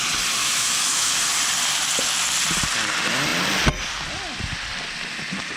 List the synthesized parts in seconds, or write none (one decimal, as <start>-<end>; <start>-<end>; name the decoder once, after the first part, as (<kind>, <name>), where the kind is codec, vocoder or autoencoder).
0.4-1.1 (autoencoder, DAC-VAE)